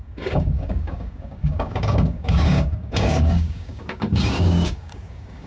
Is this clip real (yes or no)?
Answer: no